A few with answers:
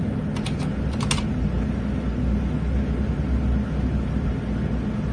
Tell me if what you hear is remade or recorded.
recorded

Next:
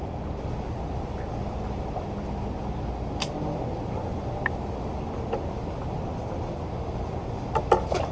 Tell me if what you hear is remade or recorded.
recorded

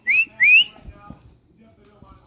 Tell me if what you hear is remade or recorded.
recorded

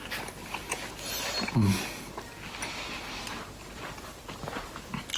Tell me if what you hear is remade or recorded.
recorded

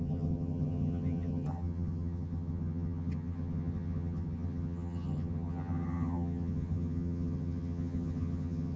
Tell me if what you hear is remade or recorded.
remade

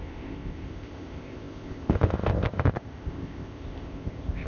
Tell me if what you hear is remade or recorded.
remade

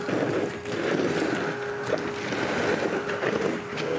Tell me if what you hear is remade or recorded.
recorded